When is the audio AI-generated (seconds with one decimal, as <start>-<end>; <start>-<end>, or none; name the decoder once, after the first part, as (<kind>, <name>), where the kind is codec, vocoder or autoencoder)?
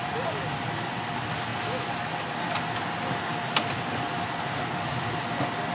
none